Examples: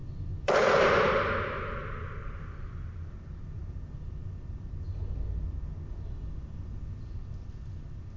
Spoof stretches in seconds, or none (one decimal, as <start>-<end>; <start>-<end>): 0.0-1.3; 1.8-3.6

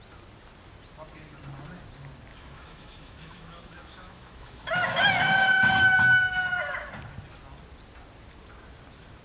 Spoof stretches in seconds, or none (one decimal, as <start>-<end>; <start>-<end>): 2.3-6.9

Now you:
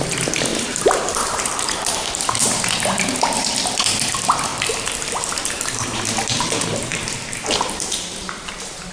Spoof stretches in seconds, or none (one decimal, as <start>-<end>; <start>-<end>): 0.5-2.1; 4.5-6.5; 6.9-8.1

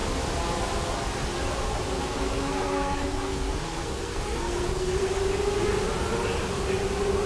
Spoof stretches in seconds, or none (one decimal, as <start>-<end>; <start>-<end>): 2.0-5.2